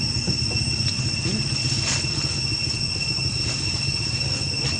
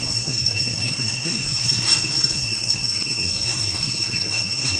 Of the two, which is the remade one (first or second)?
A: second